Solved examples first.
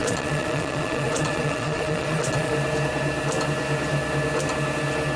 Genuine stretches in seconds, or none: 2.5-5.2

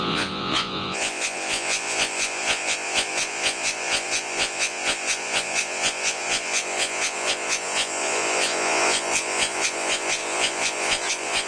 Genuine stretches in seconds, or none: none

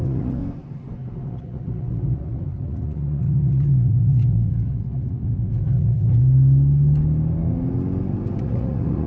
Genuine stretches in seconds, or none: 0.4-1.3; 6.2-8.4

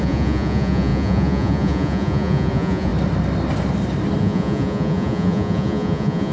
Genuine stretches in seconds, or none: 2.9-4.2

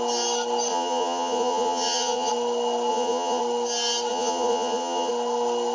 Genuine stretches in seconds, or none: 0.0-0.7; 2.3-2.9; 3.4-4.1; 5.1-5.7